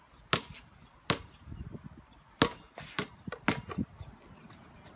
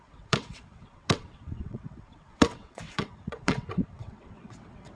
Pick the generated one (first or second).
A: second